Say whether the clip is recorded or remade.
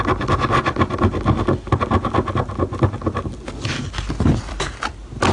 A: recorded